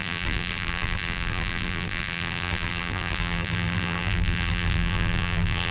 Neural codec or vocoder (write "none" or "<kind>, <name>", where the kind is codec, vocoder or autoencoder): vocoder, BigVGAN v2